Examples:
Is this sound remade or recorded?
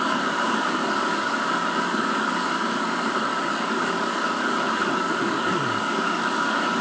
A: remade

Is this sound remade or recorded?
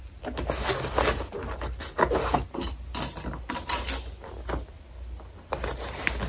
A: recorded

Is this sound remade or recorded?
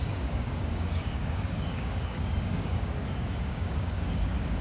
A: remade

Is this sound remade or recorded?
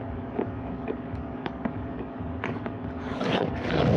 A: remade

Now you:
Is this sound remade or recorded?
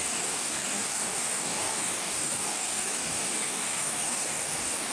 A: remade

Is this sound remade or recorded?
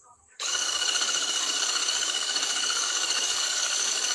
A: remade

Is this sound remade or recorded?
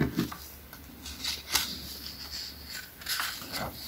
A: recorded